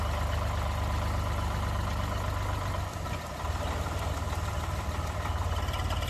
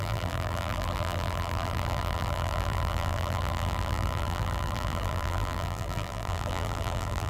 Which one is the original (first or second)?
first